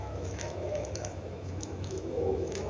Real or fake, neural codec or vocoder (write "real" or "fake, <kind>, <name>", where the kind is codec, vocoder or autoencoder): fake, autoencoder, DAC-VAE